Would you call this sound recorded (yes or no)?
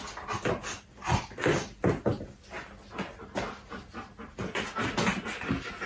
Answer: yes